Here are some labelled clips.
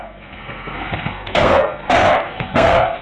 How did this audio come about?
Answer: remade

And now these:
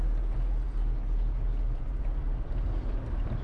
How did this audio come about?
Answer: recorded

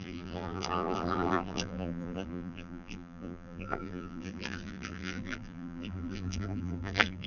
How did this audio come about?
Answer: remade